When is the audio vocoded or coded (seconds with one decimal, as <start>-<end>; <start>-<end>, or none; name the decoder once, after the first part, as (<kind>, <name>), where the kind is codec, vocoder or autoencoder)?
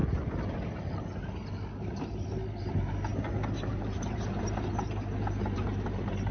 2.6-6.3 (vocoder, BigVGAN v2)